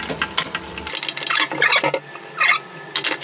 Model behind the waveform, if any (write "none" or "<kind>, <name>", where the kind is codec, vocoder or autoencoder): none